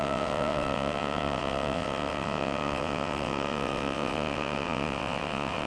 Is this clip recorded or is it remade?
remade